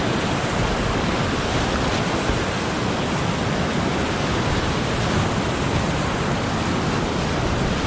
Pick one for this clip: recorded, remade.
recorded